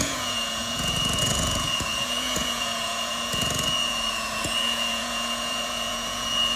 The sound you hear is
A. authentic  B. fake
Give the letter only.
B